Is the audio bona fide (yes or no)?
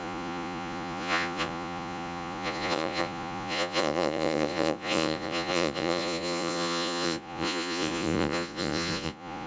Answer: no